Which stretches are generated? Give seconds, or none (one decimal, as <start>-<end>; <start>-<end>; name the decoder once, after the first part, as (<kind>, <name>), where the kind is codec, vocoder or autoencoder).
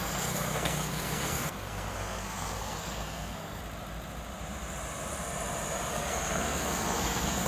0.0-3.6 (codec, SNAC); 5.9-7.5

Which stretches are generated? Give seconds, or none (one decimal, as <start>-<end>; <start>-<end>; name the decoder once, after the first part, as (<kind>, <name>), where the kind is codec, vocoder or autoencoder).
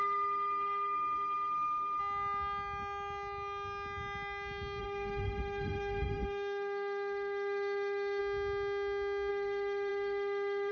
0.0-2.0 (autoencoder, DAC-VAE); 4.8-8.2; 9.3-10.7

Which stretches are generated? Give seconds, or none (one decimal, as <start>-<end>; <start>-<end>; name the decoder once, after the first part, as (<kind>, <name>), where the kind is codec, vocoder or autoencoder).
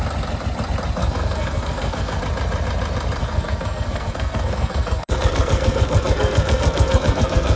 1.0-2.2 (codec, SNAC); 3.2-7.6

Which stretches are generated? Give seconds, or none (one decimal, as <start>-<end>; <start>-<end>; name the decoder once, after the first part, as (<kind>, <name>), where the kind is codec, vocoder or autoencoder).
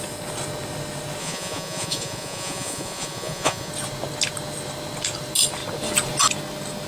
1.2-3.7 (vocoder, Vocos)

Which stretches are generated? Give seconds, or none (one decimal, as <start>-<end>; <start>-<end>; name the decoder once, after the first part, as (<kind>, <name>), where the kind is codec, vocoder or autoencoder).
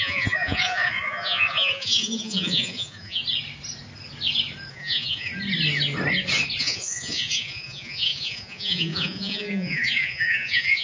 0.0-3.2 (vocoder, Vocos); 4.7-5.3; 6.6-10.8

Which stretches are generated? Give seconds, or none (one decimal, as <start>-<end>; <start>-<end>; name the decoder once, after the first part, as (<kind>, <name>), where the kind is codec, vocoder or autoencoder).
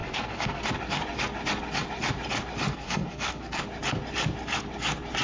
0.0-0.6 (codec, SNAC); 2.7-3.6